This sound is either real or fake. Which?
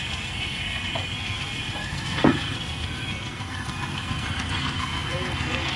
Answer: fake